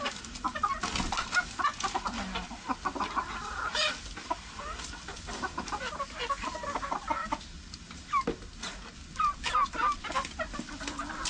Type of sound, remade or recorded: recorded